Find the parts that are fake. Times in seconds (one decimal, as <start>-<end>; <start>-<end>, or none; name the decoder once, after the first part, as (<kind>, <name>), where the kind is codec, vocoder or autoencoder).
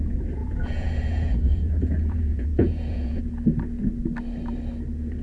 0.4-3.2 (vocoder, Vocos)